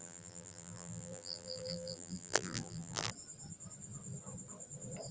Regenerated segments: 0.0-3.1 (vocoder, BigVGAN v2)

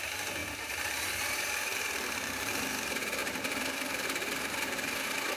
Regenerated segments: 0.4-2.5 (vocoder, BigVGAN v2); 3.2-5.4

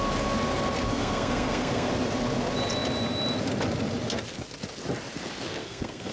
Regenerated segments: 0.9-1.9 (codec, SNAC); 5.6-6.1

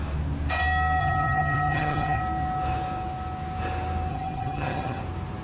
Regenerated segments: 1.0-2.2 (vocoder, HiFi-GAN); 4.1-5.0

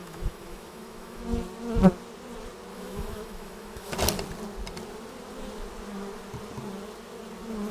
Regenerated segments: 0.0-1.2 (autoencoder, DAC-VAE); 2.7-3.9

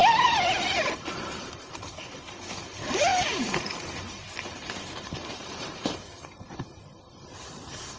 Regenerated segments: 0.8-8.0 (vocoder, BigVGAN v2)

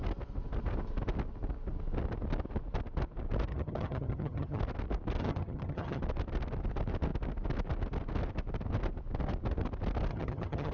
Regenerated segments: 3.5-4.6 (vocoder, HiFi-GAN); 5.2-6.0; 10.1-10.7

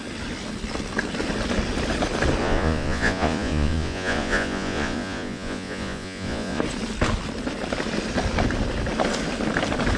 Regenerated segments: 2.4-6.6 (vocoder, Vocos)